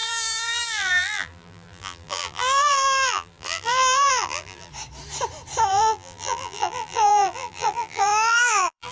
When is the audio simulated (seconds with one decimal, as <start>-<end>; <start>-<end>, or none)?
0.0-4.7; 5.7-8.9